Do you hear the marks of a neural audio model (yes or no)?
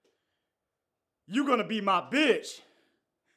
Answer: no